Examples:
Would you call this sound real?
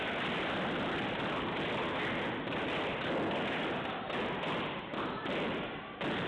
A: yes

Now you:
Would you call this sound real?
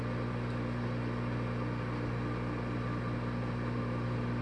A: yes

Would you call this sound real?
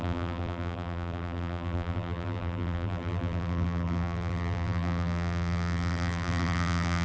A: no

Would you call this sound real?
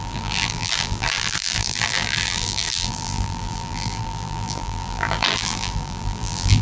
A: no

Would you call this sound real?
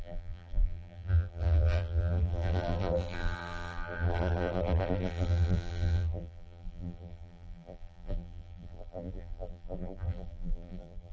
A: no